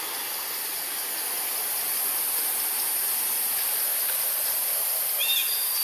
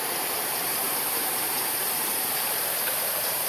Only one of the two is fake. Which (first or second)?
second